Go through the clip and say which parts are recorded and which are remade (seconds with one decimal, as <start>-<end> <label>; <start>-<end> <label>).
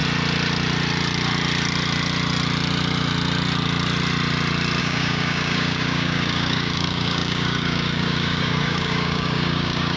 0.0-4.8 recorded; 4.8-10.0 remade